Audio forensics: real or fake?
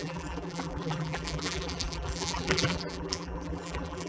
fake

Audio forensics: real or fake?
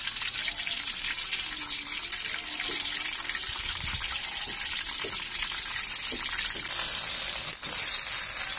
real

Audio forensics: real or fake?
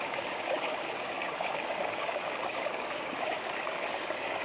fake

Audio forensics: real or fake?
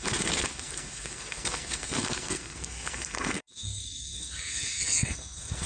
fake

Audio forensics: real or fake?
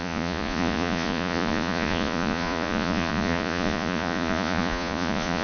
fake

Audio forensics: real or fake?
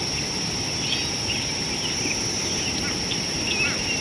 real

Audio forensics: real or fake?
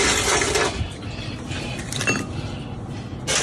real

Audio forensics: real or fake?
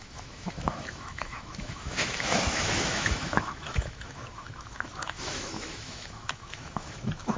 fake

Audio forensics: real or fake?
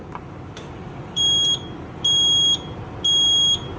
real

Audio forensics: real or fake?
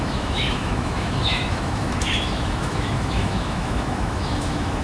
fake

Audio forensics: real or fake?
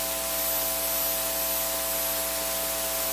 real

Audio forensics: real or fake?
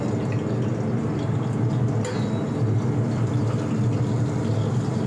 real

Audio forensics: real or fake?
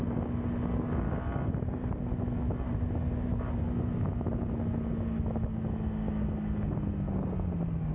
real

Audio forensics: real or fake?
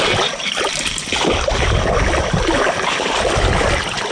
real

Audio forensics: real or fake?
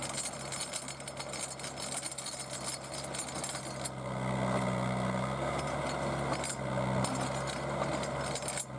real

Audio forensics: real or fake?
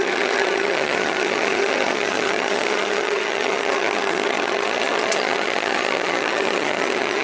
fake